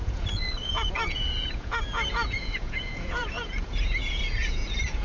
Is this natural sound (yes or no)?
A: no